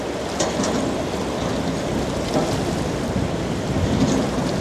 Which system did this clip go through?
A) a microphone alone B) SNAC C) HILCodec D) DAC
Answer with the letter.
A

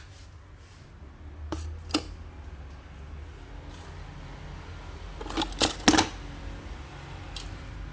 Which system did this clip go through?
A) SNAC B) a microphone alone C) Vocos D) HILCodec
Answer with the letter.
B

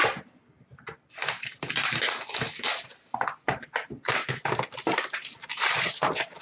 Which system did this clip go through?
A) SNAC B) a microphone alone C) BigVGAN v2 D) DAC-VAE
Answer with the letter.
B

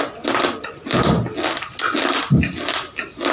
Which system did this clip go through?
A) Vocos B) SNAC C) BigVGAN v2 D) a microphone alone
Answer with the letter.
D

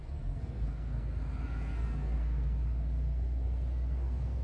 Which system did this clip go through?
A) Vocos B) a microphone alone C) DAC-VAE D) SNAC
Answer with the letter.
D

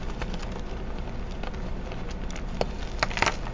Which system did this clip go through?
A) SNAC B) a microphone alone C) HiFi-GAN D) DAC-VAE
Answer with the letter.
B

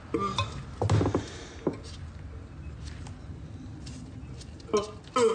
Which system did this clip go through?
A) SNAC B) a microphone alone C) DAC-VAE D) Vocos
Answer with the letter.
B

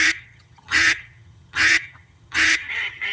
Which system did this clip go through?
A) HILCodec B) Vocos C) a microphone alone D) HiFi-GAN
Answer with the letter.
D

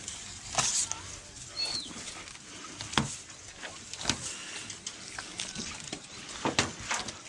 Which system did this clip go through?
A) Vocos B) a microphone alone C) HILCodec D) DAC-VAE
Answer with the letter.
B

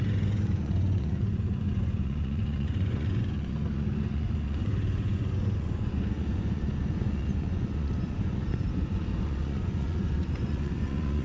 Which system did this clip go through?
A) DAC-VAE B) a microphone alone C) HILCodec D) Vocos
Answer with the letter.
D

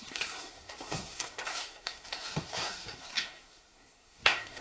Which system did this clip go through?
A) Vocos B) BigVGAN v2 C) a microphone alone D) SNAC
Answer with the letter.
D